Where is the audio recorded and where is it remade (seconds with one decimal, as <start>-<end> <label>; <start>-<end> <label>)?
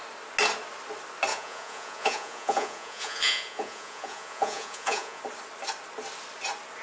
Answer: 0.0-1.3 recorded; 1.3-5.2 remade; 5.2-6.8 recorded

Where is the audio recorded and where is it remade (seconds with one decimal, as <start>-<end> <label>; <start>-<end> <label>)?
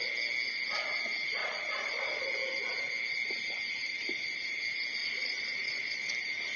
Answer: 0.0-1.4 recorded; 1.4-2.2 remade; 2.2-5.0 recorded; 5.0-6.1 remade; 6.1-6.6 recorded